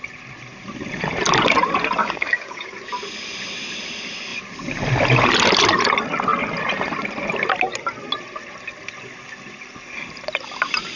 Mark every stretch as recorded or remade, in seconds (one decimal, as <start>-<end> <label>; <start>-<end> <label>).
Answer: 0.0-2.0 recorded; 2.0-2.7 remade; 2.7-11.0 recorded